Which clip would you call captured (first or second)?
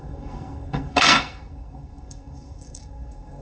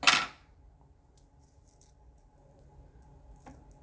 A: second